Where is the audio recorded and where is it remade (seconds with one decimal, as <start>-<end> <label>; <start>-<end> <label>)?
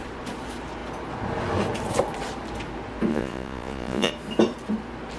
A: 0.0-3.1 recorded; 3.1-4.1 remade; 4.1-5.2 recorded